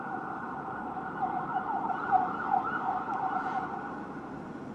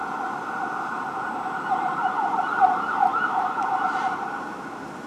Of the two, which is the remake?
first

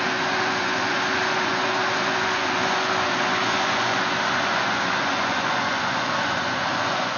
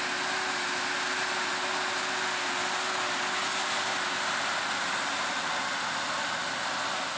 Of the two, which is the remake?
first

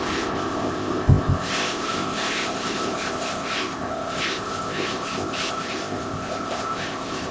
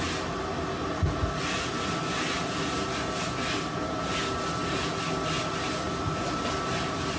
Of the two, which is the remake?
first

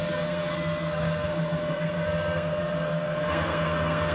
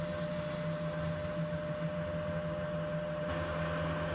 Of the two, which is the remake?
first